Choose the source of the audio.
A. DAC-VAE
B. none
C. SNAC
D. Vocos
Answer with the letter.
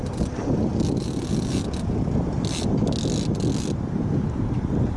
B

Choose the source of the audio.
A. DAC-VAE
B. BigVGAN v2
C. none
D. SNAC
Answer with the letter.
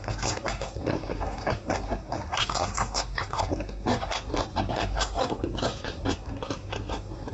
D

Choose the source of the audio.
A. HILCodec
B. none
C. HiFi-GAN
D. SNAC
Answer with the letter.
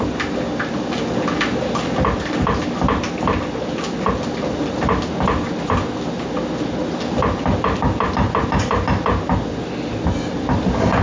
B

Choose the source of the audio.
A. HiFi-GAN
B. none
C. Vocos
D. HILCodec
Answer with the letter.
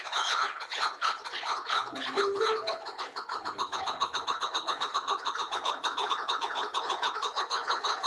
D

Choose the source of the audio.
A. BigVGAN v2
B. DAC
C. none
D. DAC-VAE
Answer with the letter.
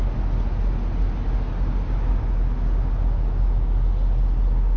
C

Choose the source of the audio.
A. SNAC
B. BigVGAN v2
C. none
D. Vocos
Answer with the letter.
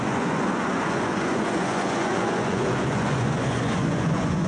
D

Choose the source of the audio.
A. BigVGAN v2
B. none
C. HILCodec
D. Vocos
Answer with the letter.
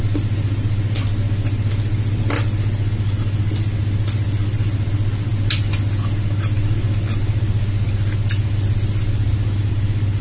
B